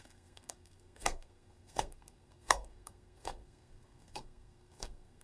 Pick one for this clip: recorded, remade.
remade